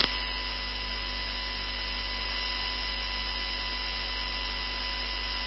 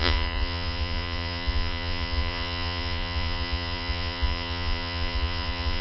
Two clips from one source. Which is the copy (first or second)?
second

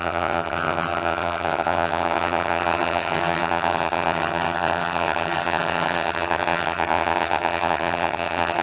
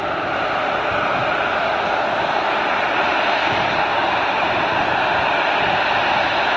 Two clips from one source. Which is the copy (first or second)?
first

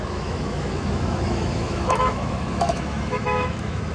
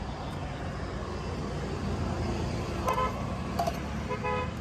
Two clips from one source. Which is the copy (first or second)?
first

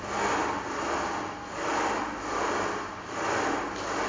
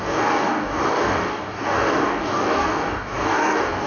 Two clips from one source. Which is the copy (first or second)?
second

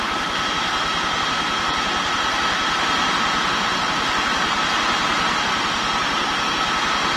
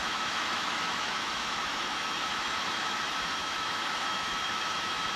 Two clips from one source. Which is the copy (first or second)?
second